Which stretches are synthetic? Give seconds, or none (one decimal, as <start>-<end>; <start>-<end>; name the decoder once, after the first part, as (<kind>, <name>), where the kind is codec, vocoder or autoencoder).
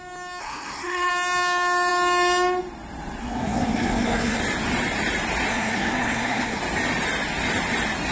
0.4-1.1 (codec, SNAC); 3.2-4.4; 5.5-6.6